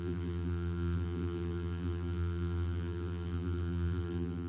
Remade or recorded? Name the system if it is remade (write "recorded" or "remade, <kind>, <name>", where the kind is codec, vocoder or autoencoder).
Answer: remade, vocoder, BigVGAN v2